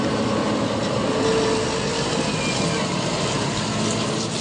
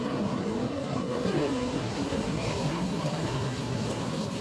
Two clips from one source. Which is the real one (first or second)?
first